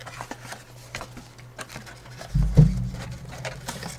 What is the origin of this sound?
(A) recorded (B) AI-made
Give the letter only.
A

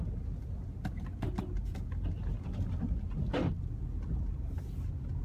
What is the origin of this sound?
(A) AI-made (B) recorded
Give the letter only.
B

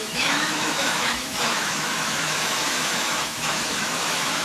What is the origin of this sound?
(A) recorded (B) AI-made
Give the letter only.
B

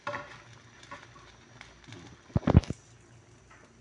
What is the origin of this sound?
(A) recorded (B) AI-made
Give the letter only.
A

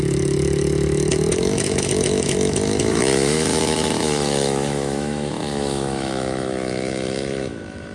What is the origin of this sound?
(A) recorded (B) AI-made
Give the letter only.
B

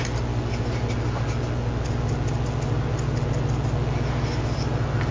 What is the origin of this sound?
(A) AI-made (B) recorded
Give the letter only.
B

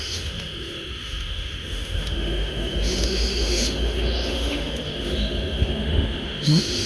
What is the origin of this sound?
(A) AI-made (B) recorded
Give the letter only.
A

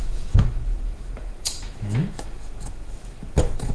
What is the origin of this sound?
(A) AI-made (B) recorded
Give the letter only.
A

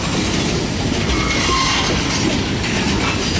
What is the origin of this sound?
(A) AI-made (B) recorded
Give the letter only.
B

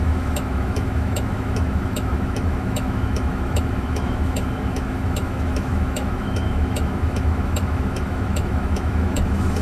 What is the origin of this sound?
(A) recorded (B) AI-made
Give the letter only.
B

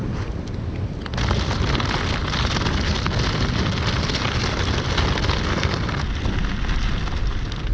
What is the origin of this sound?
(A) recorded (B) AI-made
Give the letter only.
A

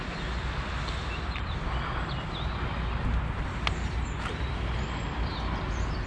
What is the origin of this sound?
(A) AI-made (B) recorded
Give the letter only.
B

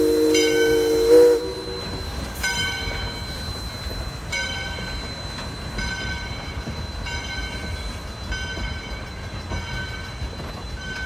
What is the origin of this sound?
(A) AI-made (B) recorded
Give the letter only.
B